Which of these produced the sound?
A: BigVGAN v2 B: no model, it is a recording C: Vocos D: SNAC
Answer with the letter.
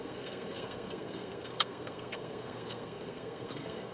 D